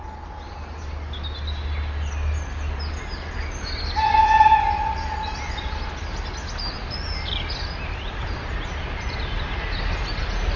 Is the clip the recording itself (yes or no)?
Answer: yes